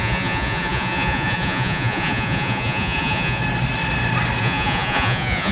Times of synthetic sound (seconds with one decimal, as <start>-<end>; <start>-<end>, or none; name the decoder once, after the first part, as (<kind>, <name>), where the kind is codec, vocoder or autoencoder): 0.0-3.4 (vocoder, Vocos); 4.4-5.5